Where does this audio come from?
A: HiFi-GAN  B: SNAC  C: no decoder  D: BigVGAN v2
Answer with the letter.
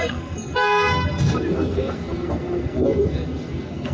B